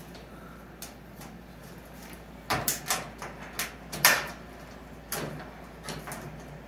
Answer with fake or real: real